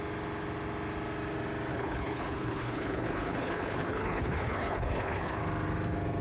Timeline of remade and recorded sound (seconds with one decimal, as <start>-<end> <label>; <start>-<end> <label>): 0.0-1.7 recorded; 1.7-5.4 remade; 5.4-6.2 recorded